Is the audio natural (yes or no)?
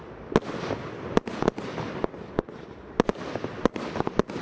yes